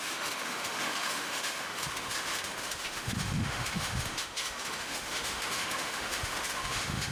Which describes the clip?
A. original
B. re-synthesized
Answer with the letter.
B